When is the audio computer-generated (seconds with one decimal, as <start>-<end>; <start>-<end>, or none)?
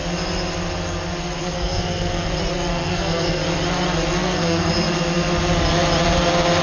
1.4-2.3; 2.7-3.4; 4.2-4.7